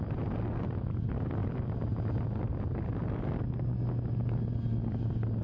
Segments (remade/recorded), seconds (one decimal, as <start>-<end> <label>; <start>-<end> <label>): 0.0-5.4 recorded